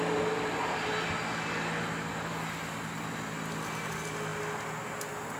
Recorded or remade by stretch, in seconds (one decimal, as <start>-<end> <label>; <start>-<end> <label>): 0.0-5.4 recorded